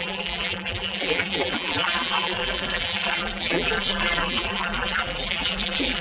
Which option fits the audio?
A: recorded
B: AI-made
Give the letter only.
B